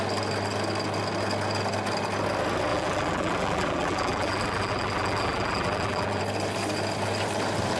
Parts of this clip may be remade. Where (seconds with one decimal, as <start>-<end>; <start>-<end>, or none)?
2.7-6.2